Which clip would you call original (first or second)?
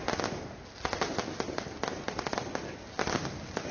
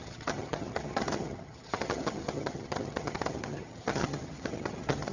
first